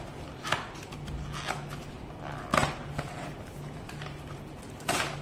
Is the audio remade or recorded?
recorded